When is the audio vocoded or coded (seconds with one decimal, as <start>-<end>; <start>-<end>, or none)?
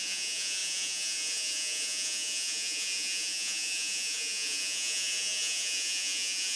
0.0-6.6